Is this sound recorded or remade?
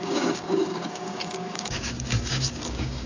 remade